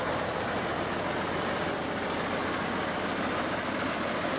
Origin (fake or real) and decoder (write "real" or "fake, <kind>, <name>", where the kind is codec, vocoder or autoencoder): real